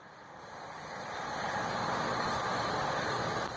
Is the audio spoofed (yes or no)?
no